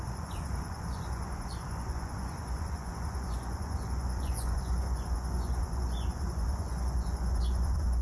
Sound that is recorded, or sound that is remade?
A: remade